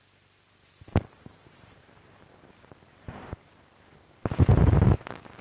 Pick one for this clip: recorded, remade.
remade